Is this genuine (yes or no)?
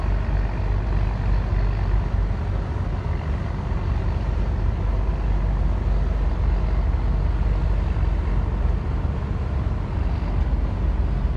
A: yes